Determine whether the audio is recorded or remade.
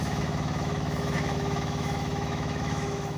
remade